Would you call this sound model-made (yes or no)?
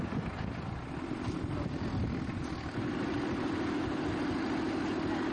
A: no